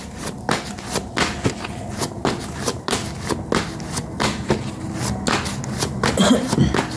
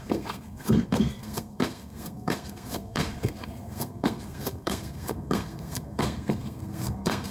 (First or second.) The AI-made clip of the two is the second